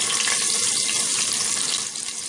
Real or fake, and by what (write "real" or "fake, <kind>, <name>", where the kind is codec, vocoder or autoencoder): real